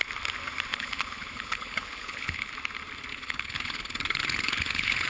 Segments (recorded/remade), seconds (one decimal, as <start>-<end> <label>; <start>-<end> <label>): 0.0-0.7 recorded; 0.7-2.5 remade; 2.5-3.1 recorded; 3.1-5.1 remade